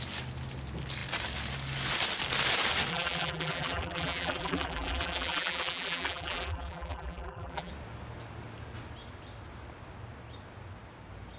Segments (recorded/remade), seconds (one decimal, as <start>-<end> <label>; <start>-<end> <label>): 0.0-2.9 recorded; 2.9-7.7 remade; 7.7-11.4 recorded